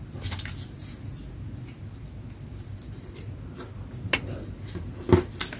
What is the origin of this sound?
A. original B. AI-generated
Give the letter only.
A